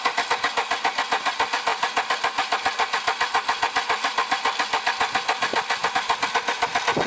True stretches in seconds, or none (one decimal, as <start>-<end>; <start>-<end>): 0.0-7.1